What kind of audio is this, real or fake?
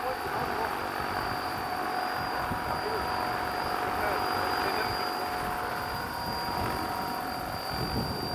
real